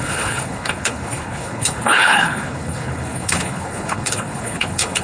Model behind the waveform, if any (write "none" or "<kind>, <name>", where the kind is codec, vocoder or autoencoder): codec, HILCodec